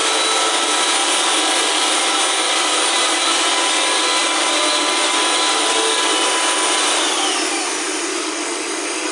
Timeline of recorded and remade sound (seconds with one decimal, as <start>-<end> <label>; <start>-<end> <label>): 0.0-8.1 recorded; 8.1-9.1 remade